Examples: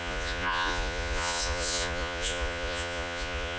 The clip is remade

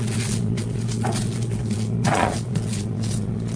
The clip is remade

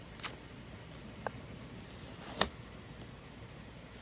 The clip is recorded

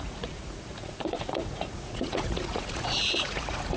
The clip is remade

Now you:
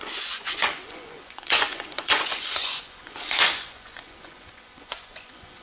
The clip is remade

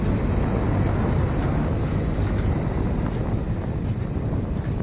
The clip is recorded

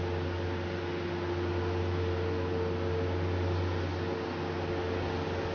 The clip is recorded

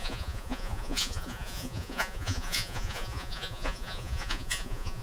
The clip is remade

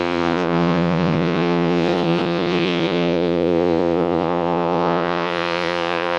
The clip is remade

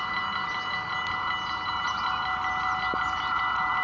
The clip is recorded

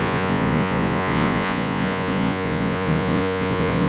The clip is remade